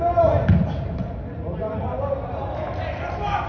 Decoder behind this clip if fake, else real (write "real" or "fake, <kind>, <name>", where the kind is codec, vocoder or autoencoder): real